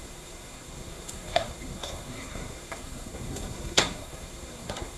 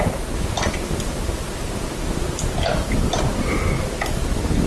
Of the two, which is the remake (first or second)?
first